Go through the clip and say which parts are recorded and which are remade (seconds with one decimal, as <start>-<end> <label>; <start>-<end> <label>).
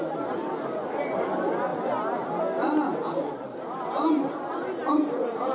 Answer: 0.0-5.5 recorded